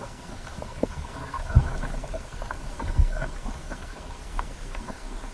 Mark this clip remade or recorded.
remade